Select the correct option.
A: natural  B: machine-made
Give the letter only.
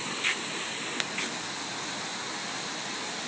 A